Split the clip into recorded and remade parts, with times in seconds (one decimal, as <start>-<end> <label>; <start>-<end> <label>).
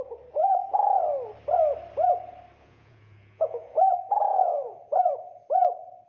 0.0-0.4 recorded; 0.4-1.0 remade; 1.0-2.6 recorded; 2.6-3.9 remade; 3.9-4.3 recorded; 4.3-5.1 remade; 5.1-6.1 recorded